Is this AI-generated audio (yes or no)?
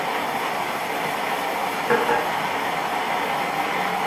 no